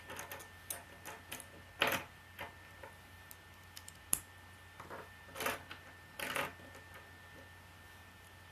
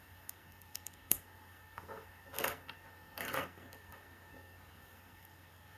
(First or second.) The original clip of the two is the first